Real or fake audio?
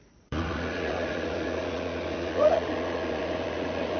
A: fake